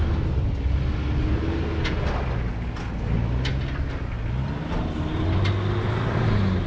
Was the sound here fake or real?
real